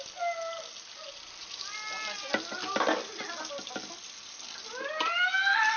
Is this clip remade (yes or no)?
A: no